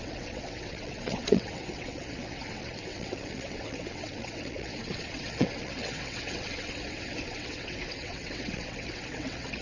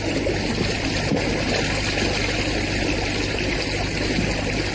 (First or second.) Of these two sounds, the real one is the second